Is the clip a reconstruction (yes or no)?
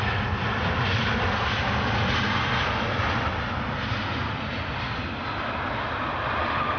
no